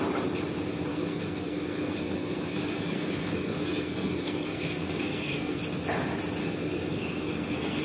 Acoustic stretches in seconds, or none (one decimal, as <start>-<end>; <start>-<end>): 0.0-0.9; 5.6-6.4